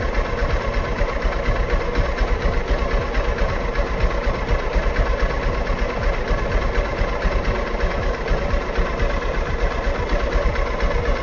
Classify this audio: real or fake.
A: real